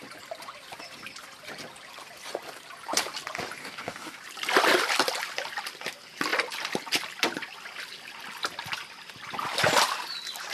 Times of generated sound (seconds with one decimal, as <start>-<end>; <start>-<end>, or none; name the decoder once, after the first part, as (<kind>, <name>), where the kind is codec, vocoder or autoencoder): 3.6-4.2 (codec, DAC)